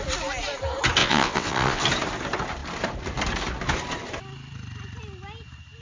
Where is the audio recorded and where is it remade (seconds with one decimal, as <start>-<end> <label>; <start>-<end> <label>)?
0.0-1.0 recorded; 1.0-1.8 remade; 1.8-5.8 recorded